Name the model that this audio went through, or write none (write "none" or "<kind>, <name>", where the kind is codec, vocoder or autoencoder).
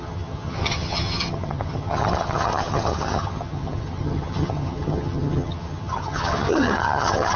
vocoder, HiFi-GAN